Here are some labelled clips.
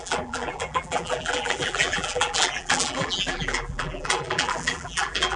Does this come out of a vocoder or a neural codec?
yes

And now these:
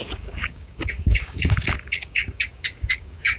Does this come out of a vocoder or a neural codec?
yes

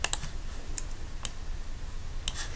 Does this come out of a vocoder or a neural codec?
no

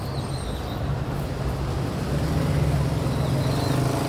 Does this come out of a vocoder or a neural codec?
no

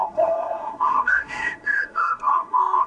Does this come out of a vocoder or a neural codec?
yes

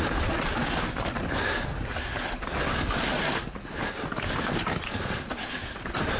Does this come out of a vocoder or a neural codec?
no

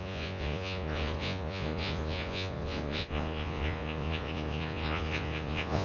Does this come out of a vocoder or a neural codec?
yes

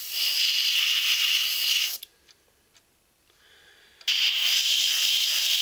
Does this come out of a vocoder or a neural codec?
no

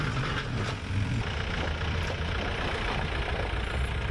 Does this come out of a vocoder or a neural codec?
no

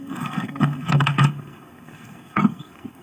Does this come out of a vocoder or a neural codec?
yes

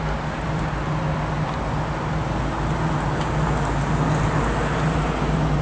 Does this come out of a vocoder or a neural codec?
no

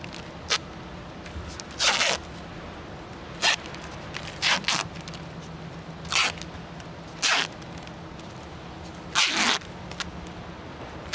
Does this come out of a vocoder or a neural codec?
no